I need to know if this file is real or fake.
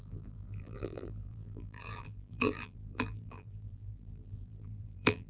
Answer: fake